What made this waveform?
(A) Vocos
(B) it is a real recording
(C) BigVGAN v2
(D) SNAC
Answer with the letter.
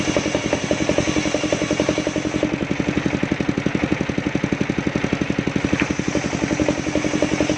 B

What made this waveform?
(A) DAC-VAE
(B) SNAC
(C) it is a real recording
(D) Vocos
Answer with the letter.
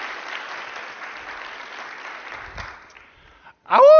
C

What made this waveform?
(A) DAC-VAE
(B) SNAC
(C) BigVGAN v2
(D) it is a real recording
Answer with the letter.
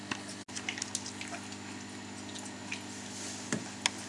D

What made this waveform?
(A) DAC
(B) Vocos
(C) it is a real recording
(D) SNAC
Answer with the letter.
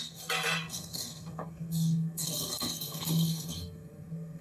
D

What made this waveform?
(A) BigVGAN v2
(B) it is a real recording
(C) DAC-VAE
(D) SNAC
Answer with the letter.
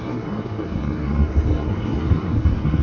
D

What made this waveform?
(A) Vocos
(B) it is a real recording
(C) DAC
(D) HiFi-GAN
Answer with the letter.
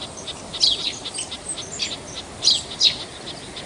B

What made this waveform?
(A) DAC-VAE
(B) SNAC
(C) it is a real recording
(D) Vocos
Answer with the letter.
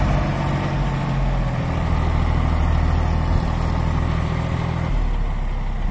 C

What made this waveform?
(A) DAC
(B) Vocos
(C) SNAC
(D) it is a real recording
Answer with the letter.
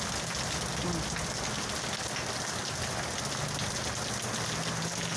D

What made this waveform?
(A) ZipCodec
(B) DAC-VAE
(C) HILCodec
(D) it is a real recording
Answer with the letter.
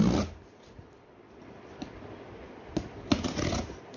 D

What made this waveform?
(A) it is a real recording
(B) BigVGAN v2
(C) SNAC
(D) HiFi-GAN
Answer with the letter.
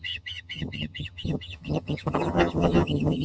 D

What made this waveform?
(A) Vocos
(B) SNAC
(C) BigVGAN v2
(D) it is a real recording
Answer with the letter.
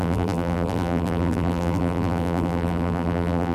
C